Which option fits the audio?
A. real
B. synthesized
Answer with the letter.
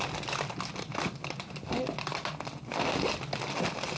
A